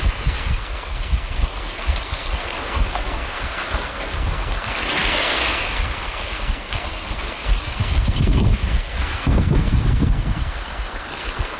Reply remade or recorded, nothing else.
remade